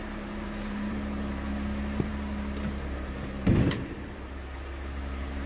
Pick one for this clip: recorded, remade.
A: remade